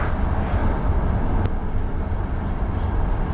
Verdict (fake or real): real